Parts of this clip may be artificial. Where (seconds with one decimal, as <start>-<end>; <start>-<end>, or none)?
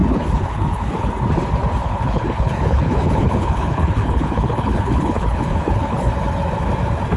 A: 0.0-1.1; 1.8-6.1